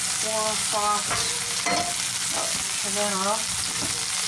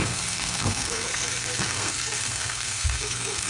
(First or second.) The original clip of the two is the first